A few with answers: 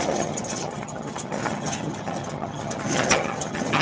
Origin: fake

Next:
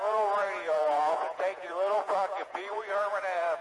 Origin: fake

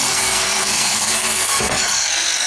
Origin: fake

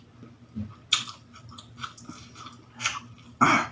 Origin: real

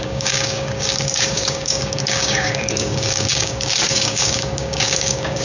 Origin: fake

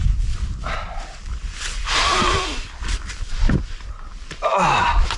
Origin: fake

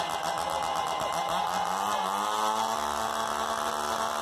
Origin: real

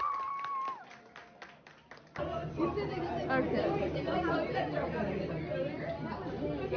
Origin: real